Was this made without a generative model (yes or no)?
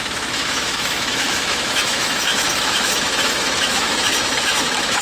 no